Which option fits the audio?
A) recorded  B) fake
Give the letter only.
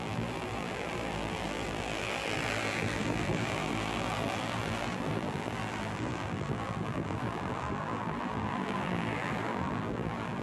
B